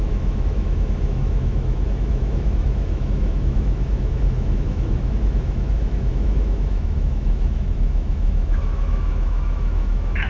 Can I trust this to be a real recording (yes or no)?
no